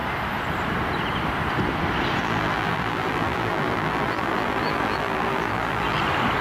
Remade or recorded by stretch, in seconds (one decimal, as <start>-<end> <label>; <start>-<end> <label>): 0.0-2.2 recorded; 2.2-6.0 remade; 6.0-6.4 recorded